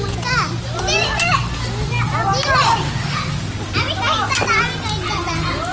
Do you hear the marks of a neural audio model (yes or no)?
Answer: no